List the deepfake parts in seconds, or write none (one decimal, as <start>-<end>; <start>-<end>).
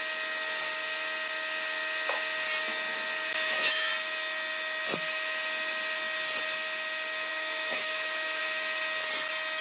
3.3-3.9; 7.3-8.4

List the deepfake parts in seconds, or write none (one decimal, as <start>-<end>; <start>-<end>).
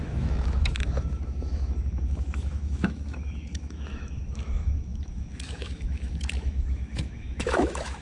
0.0-8.0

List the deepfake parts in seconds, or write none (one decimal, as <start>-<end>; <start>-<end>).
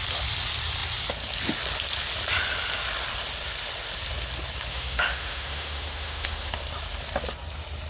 4.7-6.5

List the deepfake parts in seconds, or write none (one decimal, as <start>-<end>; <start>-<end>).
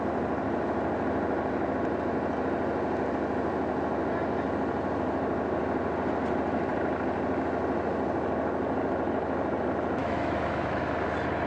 10.0-10.8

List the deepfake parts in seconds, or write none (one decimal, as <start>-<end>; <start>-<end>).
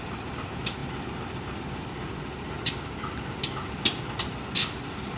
none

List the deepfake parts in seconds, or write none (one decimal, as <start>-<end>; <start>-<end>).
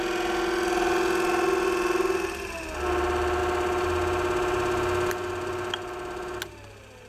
none